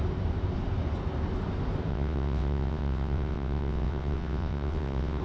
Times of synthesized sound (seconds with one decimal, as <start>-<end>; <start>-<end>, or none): 1.9-5.2